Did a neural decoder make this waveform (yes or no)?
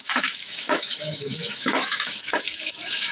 yes